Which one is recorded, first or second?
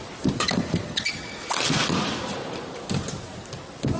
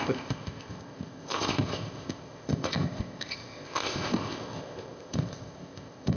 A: first